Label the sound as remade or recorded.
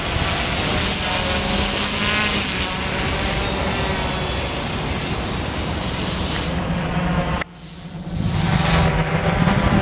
recorded